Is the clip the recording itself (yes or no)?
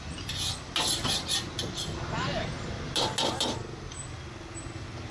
yes